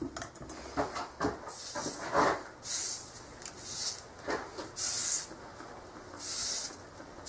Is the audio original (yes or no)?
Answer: yes